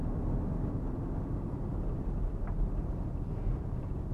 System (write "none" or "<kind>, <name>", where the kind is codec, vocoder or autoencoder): none